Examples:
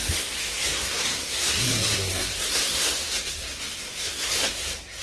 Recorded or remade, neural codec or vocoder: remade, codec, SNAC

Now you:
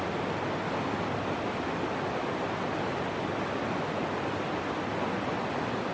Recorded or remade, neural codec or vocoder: recorded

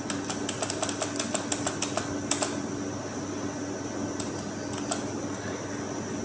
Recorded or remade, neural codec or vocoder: recorded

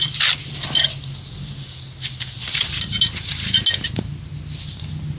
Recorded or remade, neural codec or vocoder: recorded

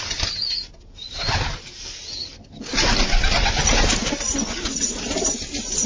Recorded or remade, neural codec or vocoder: recorded